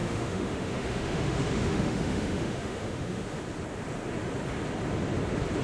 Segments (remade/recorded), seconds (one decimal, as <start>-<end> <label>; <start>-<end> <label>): 0.0-3.4 remade; 3.4-5.6 recorded